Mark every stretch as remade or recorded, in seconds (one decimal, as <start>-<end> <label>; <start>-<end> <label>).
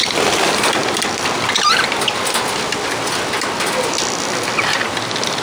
0.0-5.4 recorded